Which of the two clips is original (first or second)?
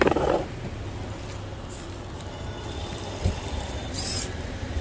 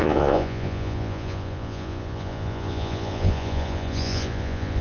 first